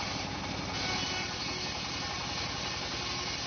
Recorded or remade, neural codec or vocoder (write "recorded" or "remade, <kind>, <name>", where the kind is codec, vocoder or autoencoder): recorded